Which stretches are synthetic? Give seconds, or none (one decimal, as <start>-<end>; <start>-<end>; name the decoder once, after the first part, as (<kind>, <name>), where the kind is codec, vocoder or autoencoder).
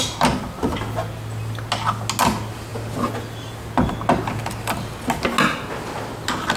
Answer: none